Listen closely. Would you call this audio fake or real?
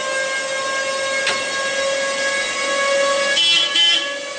real